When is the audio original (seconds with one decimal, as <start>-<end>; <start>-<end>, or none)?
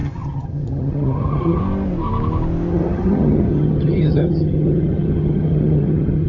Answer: 1.6-2.7